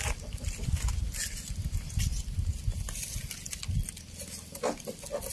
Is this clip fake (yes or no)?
no